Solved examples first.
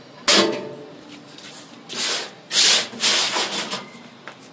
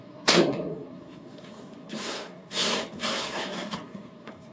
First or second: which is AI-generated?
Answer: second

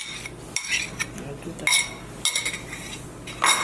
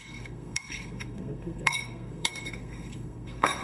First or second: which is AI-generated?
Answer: second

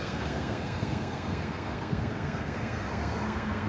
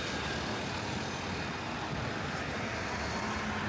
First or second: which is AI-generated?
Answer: first